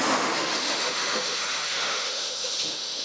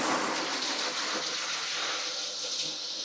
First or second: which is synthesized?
first